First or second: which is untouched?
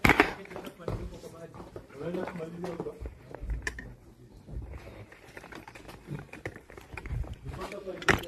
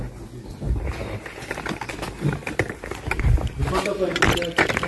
second